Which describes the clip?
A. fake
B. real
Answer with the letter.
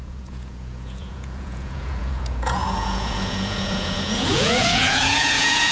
A